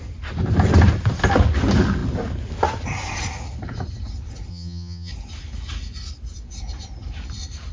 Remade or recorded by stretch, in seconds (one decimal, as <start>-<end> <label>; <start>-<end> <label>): 0.0-4.5 recorded; 4.5-5.1 remade; 5.1-7.7 recorded